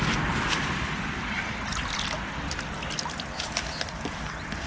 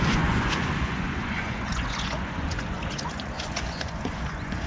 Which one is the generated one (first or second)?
second